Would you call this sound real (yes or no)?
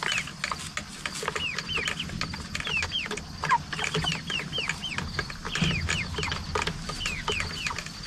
yes